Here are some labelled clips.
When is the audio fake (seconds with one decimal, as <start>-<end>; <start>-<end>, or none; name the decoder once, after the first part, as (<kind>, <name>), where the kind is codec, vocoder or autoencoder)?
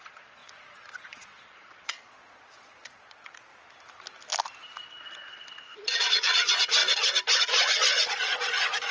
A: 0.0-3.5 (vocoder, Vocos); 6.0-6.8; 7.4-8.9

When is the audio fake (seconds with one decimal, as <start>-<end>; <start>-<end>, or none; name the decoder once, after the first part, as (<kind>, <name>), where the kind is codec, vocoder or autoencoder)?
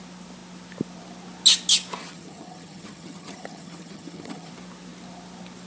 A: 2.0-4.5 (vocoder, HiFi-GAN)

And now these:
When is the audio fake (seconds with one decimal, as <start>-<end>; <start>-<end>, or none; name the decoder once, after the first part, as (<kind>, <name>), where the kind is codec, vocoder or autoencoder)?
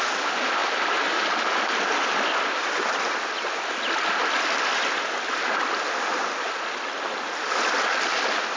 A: none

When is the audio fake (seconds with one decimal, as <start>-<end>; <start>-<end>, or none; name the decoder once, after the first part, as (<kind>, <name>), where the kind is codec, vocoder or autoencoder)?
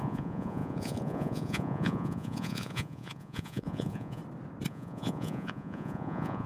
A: 0.0-4.2 (vocoder, Vocos); 4.7-6.5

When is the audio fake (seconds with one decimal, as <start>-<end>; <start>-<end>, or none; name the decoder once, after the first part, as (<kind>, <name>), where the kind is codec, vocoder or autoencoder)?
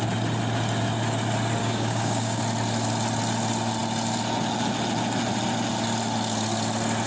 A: 1.6-2.4 (codec, DAC)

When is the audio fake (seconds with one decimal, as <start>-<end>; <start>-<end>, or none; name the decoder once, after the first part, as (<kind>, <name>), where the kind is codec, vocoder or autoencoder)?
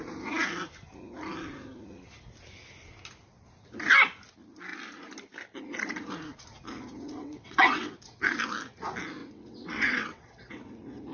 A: 7.2-7.9 (vocoder, WaveNeXt); 9.2-10.7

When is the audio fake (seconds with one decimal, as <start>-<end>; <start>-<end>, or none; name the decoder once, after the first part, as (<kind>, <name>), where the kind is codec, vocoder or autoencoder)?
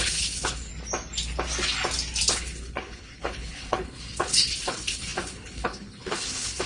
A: 0.0-0.7 (codec, HILCodec); 2.3-6.7